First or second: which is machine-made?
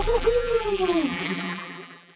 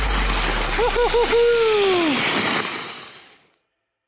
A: first